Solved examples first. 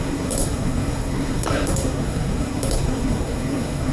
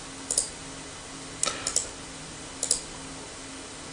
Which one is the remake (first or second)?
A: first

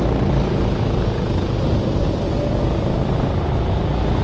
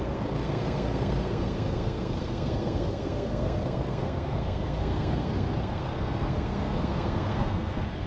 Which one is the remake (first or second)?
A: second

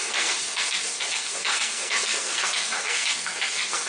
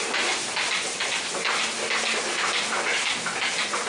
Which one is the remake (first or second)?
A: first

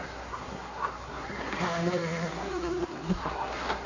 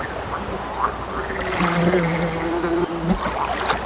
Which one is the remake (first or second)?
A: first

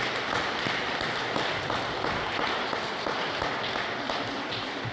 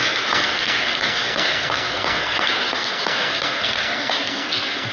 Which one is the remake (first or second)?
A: second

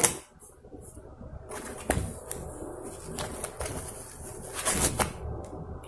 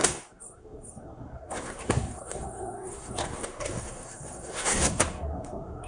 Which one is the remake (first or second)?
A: second